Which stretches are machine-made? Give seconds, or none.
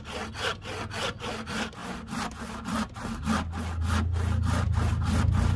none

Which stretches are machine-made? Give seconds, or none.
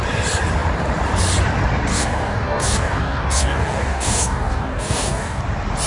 1.9-5.4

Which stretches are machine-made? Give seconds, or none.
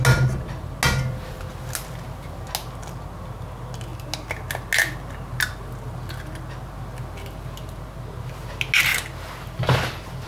none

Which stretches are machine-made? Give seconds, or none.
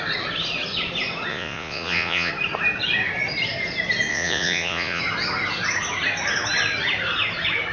1.3-2.3; 4.1-5.0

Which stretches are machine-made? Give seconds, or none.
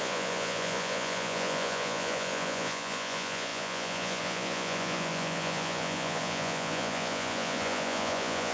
0.0-8.5